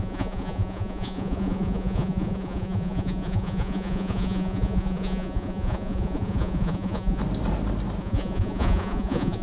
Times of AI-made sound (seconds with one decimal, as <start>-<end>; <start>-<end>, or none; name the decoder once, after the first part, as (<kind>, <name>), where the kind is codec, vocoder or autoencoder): 0.0-7.2 (vocoder, Vocos); 8.0-9.4